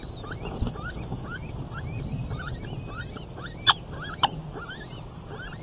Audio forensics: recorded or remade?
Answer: recorded